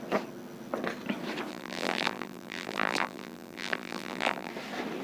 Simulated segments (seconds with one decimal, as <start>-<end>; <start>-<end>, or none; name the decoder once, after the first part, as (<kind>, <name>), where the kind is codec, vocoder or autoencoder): 1.5-4.5 (vocoder, BigVGAN v2)